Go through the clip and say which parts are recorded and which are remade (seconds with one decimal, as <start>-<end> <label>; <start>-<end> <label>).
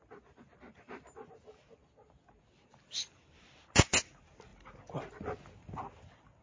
0.0-4.5 recorded; 4.5-5.1 remade; 5.1-6.4 recorded